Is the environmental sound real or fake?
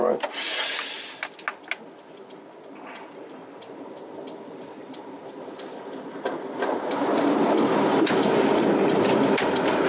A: real